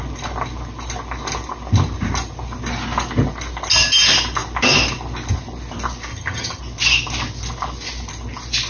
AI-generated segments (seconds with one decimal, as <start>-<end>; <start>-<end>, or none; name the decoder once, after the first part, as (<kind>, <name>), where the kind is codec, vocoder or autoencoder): 6.1-6.6 (vocoder, HiFi-GAN)